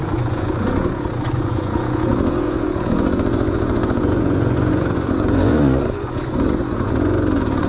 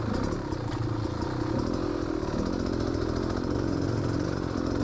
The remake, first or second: first